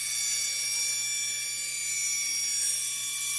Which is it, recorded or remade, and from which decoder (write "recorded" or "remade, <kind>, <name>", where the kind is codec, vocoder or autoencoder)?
recorded